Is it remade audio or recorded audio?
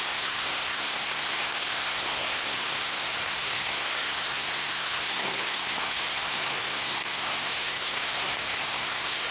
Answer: remade